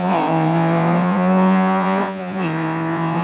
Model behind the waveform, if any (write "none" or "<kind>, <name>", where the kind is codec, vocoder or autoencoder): vocoder, Vocos